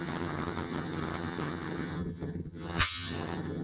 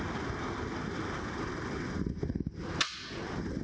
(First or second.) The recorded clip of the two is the second